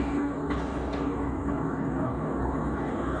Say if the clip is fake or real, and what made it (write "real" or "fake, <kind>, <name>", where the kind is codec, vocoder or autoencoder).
fake, codec, DAC